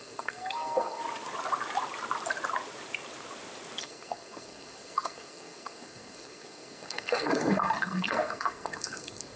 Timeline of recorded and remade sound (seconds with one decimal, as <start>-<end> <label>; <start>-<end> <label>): 0.0-1.0 remade; 1.0-3.8 recorded; 3.8-9.4 remade